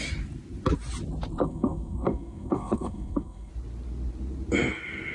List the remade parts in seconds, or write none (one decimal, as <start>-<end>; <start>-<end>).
1.4-3.5